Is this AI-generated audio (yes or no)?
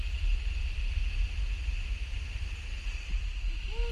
no